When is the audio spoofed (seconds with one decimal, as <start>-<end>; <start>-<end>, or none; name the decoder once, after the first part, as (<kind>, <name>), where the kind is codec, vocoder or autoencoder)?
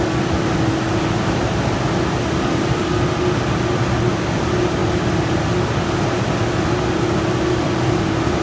none